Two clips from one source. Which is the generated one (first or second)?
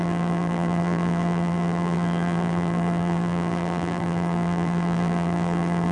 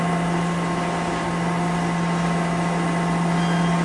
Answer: first